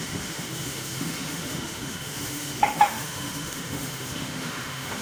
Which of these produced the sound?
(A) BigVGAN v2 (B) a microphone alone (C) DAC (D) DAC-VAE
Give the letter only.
D